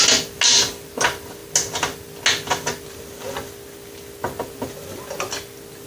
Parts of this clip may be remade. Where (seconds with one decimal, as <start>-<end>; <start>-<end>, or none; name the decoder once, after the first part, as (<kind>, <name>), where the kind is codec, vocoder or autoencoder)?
none